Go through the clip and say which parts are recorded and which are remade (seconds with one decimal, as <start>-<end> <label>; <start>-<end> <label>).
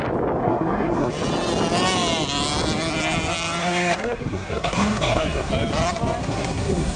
0.0-0.4 recorded; 0.4-1.1 remade; 1.1-3.6 recorded; 3.6-5.5 remade; 5.5-6.2 recorded; 6.2-7.0 remade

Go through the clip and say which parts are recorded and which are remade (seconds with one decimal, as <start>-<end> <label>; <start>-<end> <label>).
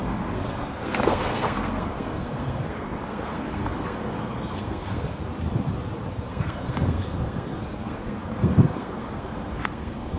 0.0-5.2 remade; 5.2-6.1 recorded; 6.1-10.2 remade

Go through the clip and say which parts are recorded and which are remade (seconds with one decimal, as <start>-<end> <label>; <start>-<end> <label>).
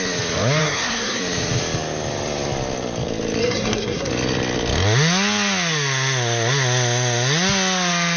0.0-0.6 recorded; 0.6-1.2 remade; 1.2-3.4 recorded; 3.4-4.1 remade; 4.1-8.2 recorded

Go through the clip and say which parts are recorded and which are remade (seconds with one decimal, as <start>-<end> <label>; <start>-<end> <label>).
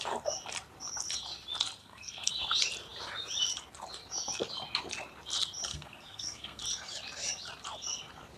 0.0-1.8 recorded; 1.8-2.3 remade; 2.3-5.7 recorded; 5.7-6.6 remade; 6.6-8.4 recorded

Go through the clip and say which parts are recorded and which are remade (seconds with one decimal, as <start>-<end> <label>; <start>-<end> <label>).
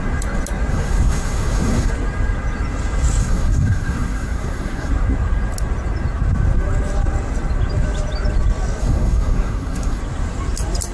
0.0-0.7 recorded; 0.7-1.9 remade; 1.9-3.2 recorded; 3.2-4.9 remade; 4.9-8.8 recorded; 8.8-10.0 remade; 10.0-10.9 recorded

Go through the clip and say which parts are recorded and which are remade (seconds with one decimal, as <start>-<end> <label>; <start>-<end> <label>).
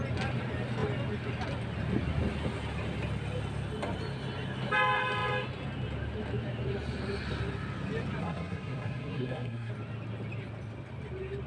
0.0-8.2 recorded; 8.2-9.7 remade; 9.7-11.5 recorded